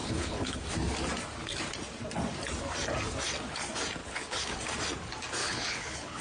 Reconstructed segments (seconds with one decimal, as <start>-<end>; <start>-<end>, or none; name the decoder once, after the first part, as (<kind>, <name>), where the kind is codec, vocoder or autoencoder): 0.0-0.6 (codec, HILCodec); 4.0-4.6; 5.4-6.2